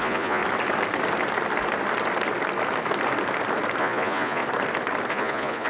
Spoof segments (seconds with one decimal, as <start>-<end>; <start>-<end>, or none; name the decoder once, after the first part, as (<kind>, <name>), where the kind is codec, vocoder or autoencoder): 0.0-0.4 (vocoder, Vocos); 3.8-4.4; 5.1-5.7